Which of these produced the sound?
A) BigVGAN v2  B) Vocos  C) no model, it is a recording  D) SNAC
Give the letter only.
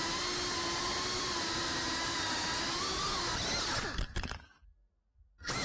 C